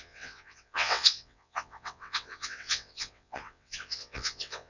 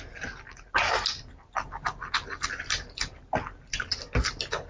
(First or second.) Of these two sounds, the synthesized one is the first